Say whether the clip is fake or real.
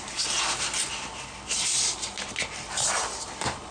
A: real